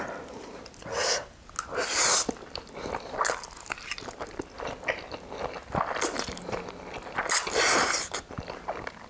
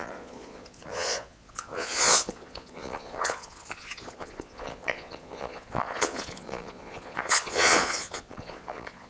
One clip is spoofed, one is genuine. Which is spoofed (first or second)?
second